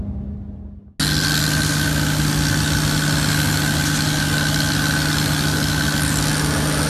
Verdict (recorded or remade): recorded